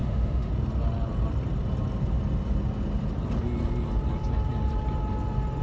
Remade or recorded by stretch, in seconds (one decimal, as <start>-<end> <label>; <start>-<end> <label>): 0.0-0.5 remade; 0.5-5.6 recorded